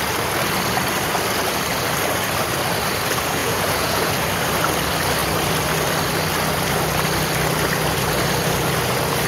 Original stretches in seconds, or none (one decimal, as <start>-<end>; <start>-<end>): 0.0-3.4; 4.1-9.3